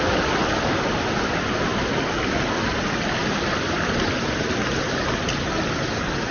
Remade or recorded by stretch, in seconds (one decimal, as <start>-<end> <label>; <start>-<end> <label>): 0.0-6.3 recorded